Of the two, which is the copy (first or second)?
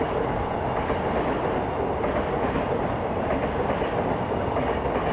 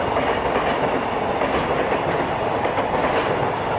second